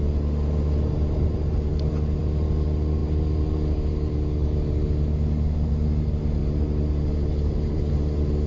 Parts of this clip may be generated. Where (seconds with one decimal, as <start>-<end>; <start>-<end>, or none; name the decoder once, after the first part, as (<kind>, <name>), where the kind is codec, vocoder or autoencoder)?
none